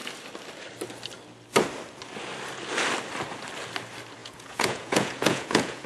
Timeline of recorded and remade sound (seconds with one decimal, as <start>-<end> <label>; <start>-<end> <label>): 0.0-4.2 recorded; 4.2-5.9 remade